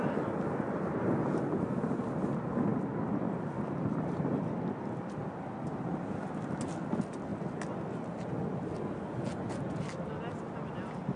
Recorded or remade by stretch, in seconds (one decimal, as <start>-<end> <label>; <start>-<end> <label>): 0.0-11.2 recorded

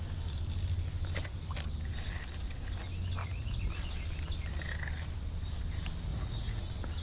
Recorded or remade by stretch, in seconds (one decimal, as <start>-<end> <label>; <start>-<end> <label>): 0.0-3.2 recorded; 3.2-3.7 remade; 3.7-6.1 recorded; 6.1-6.6 remade; 6.6-7.0 recorded

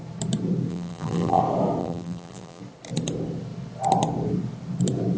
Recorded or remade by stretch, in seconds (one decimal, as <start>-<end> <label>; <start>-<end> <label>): 0.0-0.7 recorded; 0.7-1.4 remade; 1.4-1.8 recorded; 1.8-2.6 remade; 2.6-5.2 recorded

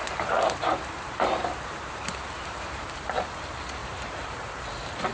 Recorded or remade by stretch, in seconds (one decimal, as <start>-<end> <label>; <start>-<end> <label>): 0.0-3.0 remade; 3.0-3.8 recorded; 3.8-4.5 remade; 4.5-5.1 recorded